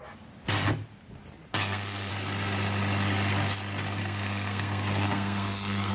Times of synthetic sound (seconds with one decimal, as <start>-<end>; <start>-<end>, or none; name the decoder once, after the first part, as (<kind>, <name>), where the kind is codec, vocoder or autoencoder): 1.5-2.1 (codec, SNAC); 4.0-5.9